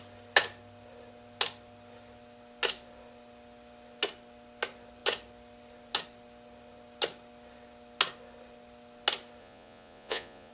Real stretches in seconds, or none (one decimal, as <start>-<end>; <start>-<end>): 0.0-9.4